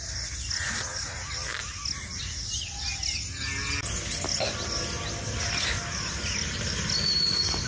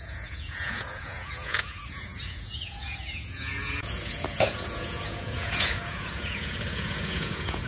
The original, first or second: first